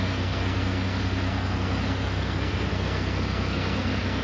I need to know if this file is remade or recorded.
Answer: remade